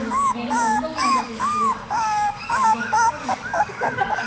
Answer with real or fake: fake